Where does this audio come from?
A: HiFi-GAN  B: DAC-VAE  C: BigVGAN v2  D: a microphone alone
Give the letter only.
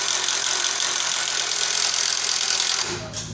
D